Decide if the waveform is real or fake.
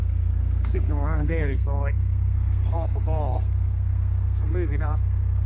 fake